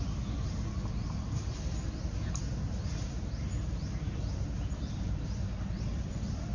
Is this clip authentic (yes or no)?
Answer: no